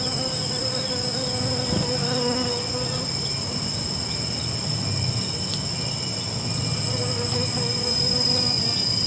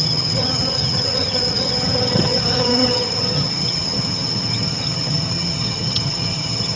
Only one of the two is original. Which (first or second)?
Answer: first